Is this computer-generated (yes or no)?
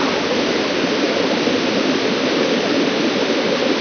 no